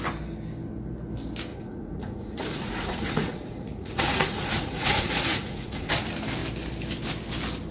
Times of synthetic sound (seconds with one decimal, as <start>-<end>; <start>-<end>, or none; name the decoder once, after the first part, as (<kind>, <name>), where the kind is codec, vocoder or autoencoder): 1.5-5.9 (vocoder, Vocos)